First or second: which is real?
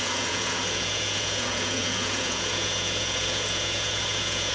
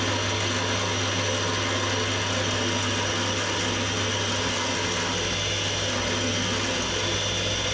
second